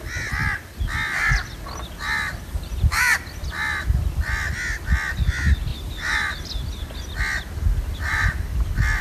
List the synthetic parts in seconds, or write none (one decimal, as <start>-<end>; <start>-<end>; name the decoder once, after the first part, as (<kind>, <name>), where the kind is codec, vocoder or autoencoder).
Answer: none